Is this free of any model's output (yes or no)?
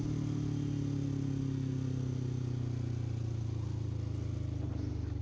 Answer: yes